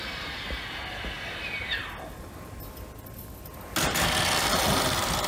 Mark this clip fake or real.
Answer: real